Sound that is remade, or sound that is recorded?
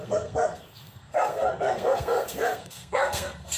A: remade